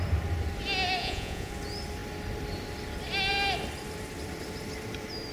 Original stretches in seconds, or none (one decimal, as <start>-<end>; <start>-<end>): 0.0-1.0; 1.5-5.3